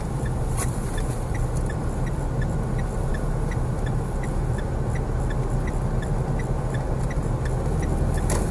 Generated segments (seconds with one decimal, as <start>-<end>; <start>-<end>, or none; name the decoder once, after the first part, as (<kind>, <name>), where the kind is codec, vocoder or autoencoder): none